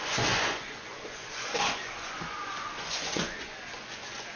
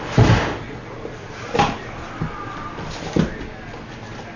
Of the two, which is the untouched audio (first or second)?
second